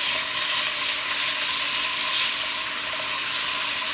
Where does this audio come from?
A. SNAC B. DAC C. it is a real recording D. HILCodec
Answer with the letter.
C